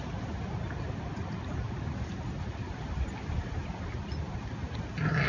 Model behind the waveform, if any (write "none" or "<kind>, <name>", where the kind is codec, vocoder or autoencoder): none